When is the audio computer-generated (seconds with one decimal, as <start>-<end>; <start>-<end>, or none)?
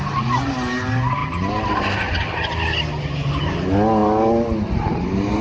none